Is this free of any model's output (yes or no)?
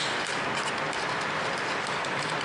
no